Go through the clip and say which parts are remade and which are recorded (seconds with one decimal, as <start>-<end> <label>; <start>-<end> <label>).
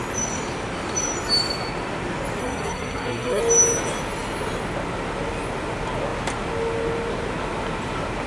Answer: 0.0-2.4 recorded; 2.4-3.4 remade; 3.4-8.3 recorded